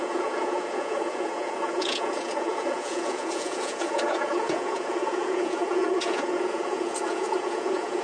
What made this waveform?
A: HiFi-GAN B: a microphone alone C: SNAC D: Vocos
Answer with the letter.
D